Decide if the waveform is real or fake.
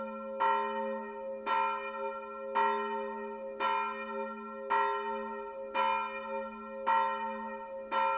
real